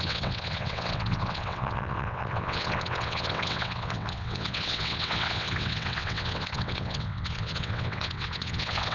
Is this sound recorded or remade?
remade